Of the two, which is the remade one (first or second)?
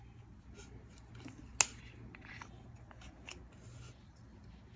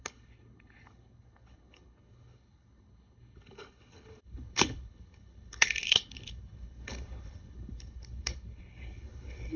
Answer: second